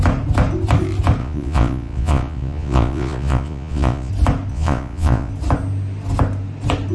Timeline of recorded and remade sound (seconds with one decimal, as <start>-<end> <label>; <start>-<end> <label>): 0.0-1.2 recorded; 1.2-4.1 remade; 4.1-4.5 recorded; 4.5-5.3 remade; 5.3-6.9 recorded